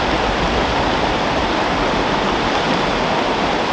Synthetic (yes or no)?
no